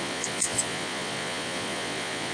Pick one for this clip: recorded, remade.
remade